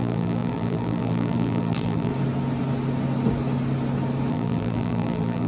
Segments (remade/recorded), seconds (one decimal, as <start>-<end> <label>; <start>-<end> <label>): 0.0-2.1 remade; 2.1-4.3 recorded; 4.3-5.5 remade